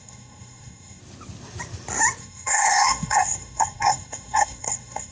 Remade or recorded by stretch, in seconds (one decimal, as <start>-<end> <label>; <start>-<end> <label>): 0.0-1.0 remade; 1.0-2.2 recorded; 2.2-5.1 remade